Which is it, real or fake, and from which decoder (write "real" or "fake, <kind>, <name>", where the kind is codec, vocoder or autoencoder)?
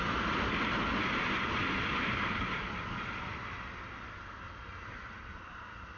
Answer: real